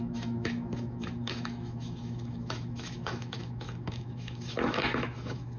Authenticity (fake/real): fake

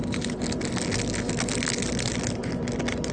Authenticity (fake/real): real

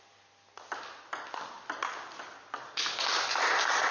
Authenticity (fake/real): real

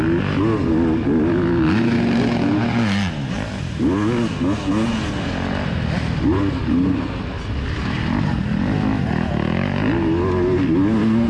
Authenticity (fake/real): real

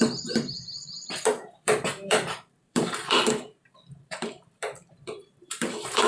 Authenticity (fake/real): fake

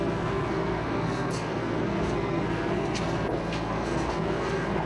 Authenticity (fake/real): fake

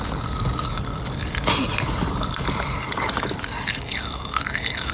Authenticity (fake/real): real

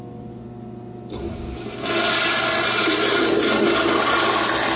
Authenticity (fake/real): real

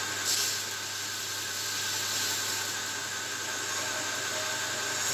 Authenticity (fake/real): real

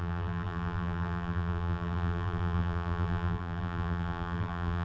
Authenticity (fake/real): fake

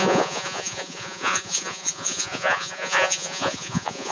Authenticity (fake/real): fake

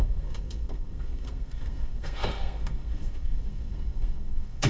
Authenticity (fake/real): fake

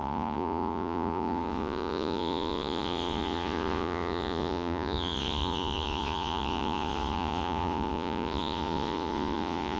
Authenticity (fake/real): fake